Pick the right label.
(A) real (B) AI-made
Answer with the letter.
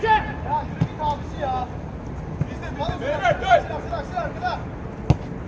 A